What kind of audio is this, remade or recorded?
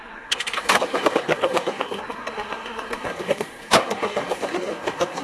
remade